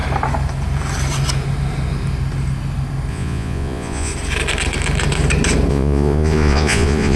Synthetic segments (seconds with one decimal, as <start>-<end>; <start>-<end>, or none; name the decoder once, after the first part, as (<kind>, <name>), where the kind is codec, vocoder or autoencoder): 3.1-4.1 (vocoder, Vocos); 5.7-7.2